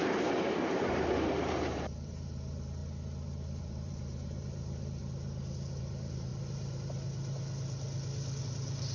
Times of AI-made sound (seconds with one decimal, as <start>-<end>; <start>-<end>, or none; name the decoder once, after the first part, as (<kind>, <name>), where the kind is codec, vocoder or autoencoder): 0.0-2.8 (vocoder, BigVGAN v2); 3.6-5.0; 5.8-6.3; 8.4-8.9